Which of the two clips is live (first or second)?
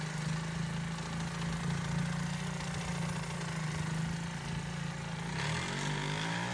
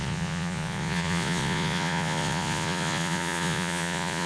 first